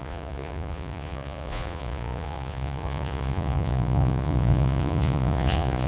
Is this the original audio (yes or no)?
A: no